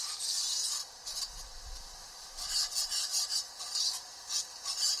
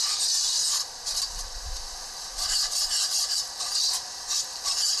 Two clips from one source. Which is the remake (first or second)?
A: second